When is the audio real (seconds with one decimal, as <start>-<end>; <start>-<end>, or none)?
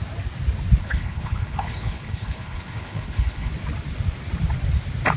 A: 0.0-0.8; 3.5-5.2